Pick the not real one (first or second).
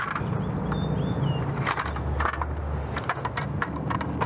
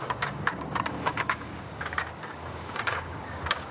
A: second